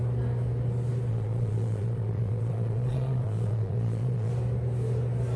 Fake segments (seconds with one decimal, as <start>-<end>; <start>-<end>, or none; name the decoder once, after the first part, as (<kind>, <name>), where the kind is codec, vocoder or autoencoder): 1.1-4.3 (vocoder, Vocos)